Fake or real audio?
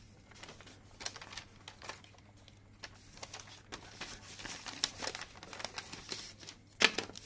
real